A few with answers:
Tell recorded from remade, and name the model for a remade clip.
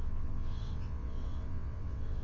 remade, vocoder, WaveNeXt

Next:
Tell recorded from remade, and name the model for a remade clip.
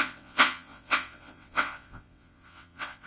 remade, vocoder, WaveNeXt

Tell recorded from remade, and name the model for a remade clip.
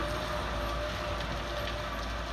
recorded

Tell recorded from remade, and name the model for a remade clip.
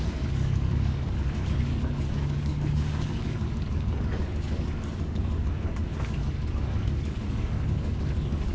remade, codec, DAC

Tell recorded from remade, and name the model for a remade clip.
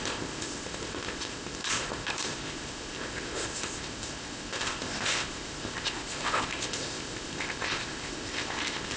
remade, codec, ZipCodec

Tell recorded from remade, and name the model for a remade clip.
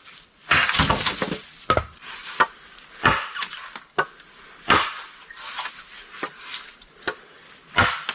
recorded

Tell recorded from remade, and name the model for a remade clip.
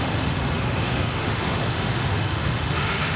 remade, autoencoder, DAC-VAE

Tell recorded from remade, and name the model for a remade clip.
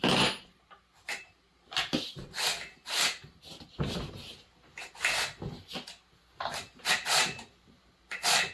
recorded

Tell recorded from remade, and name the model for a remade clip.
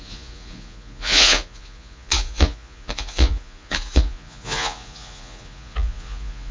remade, vocoder, Vocos